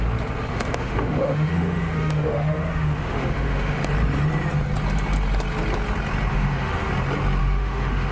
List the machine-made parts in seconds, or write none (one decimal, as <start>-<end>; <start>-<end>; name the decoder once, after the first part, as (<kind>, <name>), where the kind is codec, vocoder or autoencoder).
0.5-3.8 (autoencoder, DAC-VAE); 6.3-6.9; 7.4-8.1